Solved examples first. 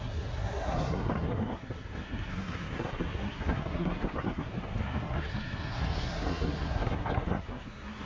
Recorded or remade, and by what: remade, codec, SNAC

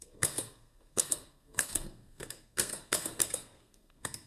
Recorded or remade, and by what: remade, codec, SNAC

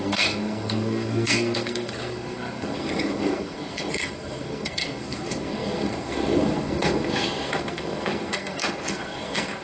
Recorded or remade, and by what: remade, codec, SNAC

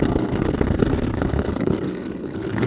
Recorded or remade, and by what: remade, codec, SNAC